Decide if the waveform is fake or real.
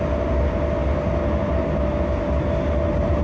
real